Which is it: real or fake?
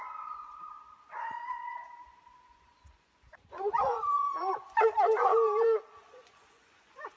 fake